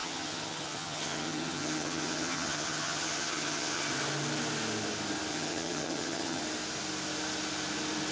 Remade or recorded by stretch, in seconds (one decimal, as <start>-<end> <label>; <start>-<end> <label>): 0.0-3.9 remade; 3.9-5.3 recorded; 5.3-6.4 remade; 6.4-8.1 recorded